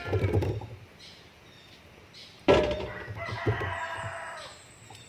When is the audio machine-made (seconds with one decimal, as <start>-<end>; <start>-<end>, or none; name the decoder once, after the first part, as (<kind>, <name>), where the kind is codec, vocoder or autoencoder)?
none